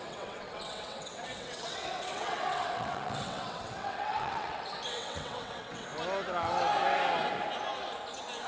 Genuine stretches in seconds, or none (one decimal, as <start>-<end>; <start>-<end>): 5.9-8.5